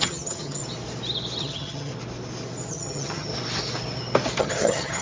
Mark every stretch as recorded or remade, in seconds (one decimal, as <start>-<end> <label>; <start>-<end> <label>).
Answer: 0.0-0.6 remade; 0.6-1.4 recorded; 1.4-1.9 remade; 1.9-2.7 recorded; 2.7-3.3 remade; 3.3-4.4 recorded; 4.4-5.0 remade